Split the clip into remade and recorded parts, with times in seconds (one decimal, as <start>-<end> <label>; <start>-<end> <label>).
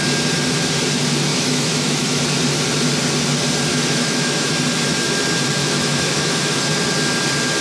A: 0.0-1.3 recorded; 1.3-2.2 remade; 2.2-3.7 recorded; 3.7-4.5 remade; 4.5-5.6 recorded; 5.6-6.6 remade; 6.6-7.6 recorded